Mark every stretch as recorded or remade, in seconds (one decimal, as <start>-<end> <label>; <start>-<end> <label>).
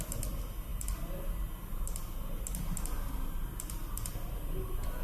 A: 0.0-5.0 recorded